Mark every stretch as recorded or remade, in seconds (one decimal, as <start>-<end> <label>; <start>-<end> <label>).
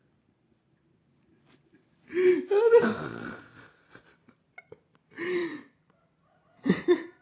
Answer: 0.0-3.2 recorded; 3.2-4.0 remade; 4.0-5.4 recorded; 5.4-7.2 remade